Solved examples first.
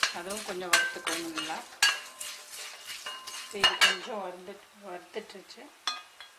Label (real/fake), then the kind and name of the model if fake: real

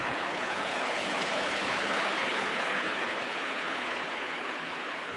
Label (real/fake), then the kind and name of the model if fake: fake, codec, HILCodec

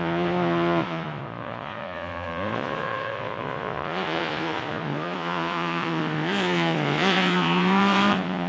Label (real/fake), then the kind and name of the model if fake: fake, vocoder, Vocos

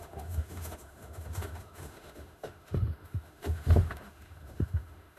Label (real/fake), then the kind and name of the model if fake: fake, autoencoder, DAC-VAE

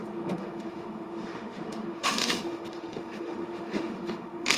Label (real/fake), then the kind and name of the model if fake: fake, autoencoder, DAC-VAE